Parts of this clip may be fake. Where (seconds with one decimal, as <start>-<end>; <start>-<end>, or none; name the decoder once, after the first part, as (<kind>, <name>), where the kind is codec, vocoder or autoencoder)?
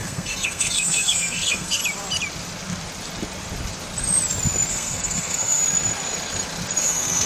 0.0-1.8 (codec, SNAC); 4.7-5.6; 6.8-7.3